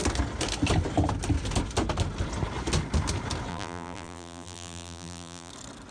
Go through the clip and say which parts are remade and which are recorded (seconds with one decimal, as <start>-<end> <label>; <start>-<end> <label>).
0.0-3.5 recorded; 3.5-5.5 remade; 5.5-5.9 recorded